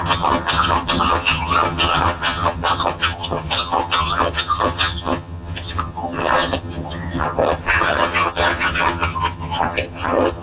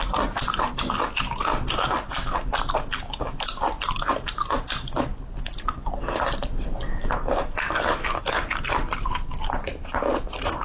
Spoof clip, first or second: first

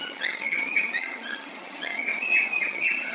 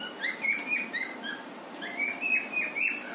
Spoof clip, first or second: first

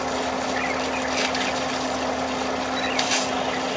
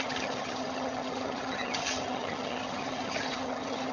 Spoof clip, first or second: second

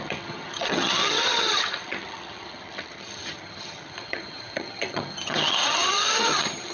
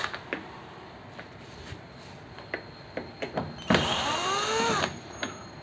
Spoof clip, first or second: first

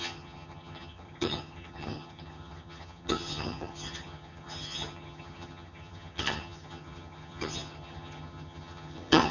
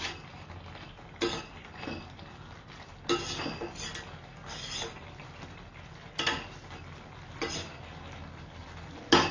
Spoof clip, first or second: first